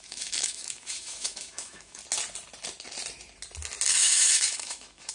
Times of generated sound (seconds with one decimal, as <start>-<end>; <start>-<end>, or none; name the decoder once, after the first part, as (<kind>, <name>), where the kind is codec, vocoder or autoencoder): 0.0-2.0 (autoencoder, DAC-VAE); 3.9-5.1